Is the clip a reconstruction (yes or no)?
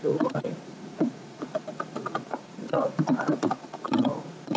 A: yes